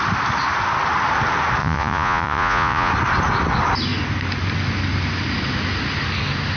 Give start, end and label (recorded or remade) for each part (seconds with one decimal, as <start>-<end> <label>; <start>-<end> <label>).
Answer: 0.0-1.6 recorded; 1.6-2.9 remade; 2.9-6.6 recorded